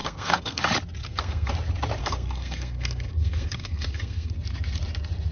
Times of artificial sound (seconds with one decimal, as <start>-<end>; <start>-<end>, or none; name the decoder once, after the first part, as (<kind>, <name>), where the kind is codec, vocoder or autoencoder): 0.0-0.6 (codec, SNAC); 1.0-1.5; 2.0-4.3